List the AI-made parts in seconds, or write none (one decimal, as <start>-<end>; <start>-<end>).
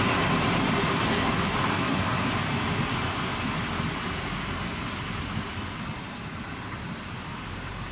1.7-2.3